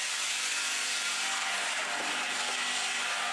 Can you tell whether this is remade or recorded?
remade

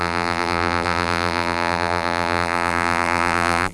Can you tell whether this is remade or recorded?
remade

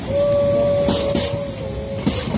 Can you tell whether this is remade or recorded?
recorded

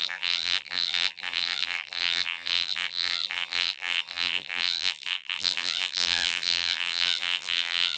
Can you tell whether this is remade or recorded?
remade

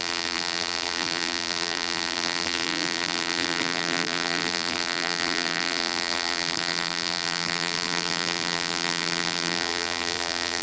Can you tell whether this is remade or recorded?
remade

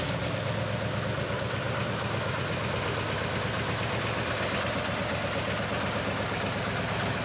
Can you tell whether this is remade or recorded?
recorded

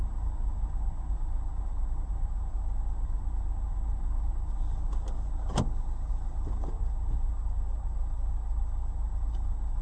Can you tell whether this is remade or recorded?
recorded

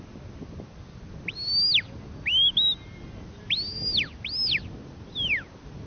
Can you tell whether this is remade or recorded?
recorded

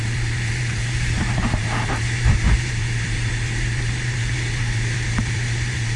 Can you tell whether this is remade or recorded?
remade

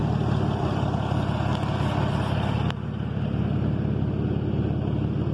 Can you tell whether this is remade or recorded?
recorded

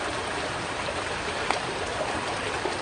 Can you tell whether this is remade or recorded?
recorded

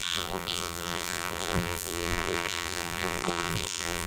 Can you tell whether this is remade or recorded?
remade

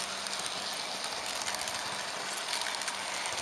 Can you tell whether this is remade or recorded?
recorded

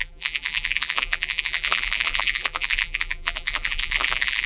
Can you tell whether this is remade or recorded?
remade